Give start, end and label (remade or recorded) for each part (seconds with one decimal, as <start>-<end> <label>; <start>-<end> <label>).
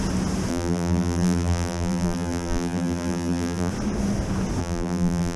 0.0-0.5 recorded; 0.5-3.7 remade; 3.7-4.6 recorded; 4.6-5.4 remade